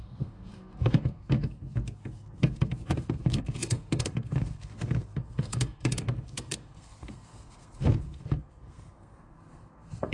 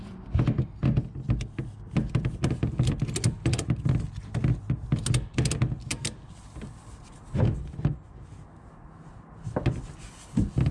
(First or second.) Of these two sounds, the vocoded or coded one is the first